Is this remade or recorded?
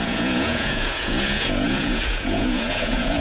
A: remade